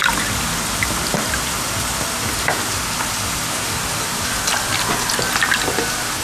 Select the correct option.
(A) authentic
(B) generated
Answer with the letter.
A